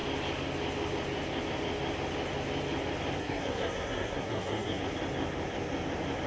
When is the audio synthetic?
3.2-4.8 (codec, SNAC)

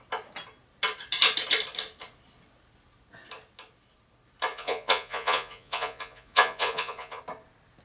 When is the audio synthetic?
4.5-7.2 (vocoder, Vocos)

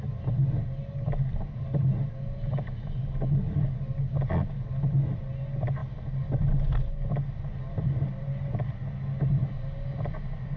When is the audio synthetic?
none

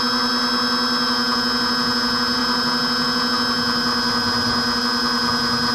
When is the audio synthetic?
none